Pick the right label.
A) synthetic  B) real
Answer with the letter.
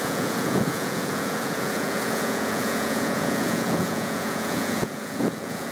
A